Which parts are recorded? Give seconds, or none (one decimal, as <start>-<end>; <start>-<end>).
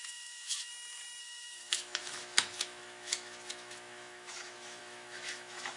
0.7-1.2